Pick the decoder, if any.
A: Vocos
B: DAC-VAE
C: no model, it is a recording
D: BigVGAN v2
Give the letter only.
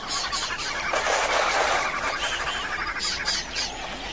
C